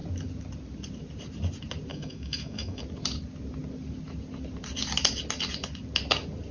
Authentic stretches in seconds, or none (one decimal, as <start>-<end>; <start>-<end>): 0.0-1.9; 2.8-6.5

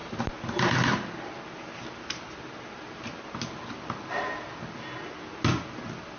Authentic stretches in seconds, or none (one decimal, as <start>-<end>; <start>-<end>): 0.0-6.2

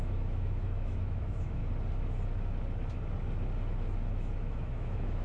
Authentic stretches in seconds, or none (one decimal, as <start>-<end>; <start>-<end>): 1.6-4.1

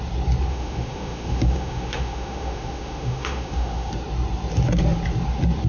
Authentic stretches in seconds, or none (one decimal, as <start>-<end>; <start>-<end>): 0.0-0.5; 3.9-5.7